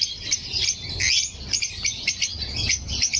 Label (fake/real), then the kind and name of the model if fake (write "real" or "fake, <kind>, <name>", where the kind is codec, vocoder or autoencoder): real